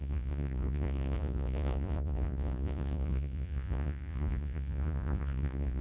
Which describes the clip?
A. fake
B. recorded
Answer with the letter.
A